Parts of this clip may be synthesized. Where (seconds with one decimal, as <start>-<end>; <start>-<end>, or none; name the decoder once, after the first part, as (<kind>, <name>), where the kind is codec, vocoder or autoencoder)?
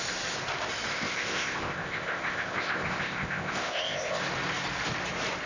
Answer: 0.9-4.2 (codec, ZipCodec)